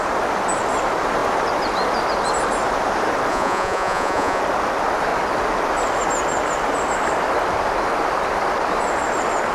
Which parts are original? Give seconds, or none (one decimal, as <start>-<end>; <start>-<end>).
0.0-3.3; 4.4-9.5